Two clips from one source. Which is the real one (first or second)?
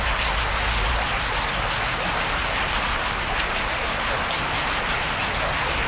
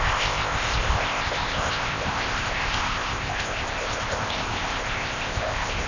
first